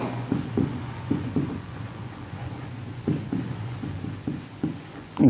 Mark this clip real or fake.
fake